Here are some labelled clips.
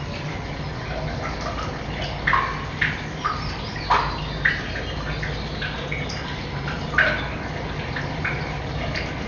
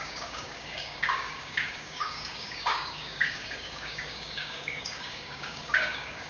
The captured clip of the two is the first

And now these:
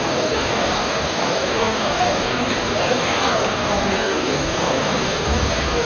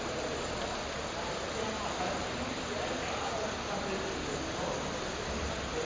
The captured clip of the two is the second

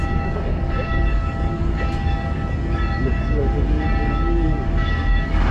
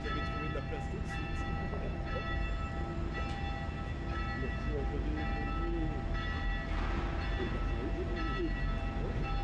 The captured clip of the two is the second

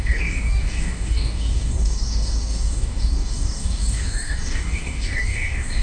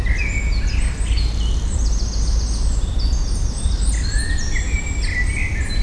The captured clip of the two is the second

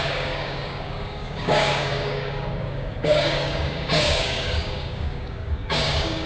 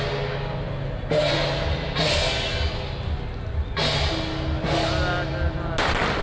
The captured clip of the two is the second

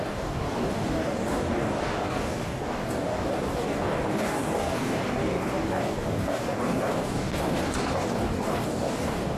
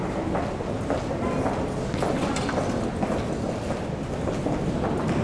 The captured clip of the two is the second